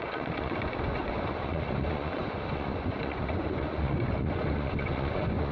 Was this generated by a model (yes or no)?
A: yes